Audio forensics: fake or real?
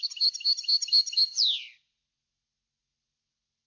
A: real